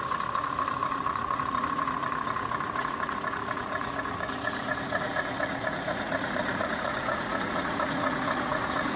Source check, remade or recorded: remade